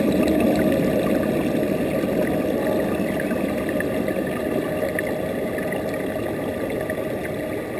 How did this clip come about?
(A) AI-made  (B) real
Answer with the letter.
B